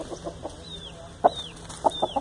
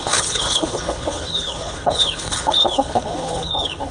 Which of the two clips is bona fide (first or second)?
first